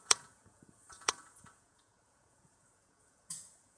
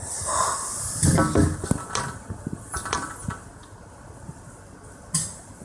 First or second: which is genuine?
second